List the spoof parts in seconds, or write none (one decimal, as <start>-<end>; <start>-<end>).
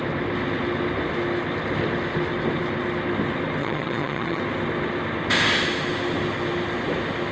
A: 3.6-4.4